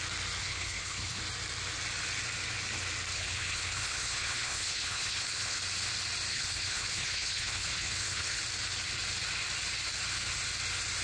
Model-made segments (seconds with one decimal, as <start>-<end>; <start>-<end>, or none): 0.4-1.2; 3.1-5.6; 6.3-8.4